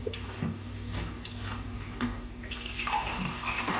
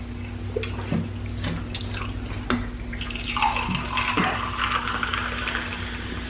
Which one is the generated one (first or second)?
first